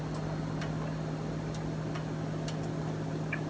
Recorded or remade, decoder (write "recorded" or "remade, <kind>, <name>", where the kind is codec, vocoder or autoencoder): recorded